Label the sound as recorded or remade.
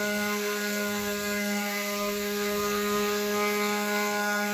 remade